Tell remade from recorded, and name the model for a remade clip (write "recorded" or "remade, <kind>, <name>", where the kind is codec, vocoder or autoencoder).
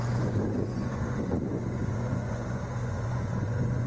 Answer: remade, vocoder, Vocos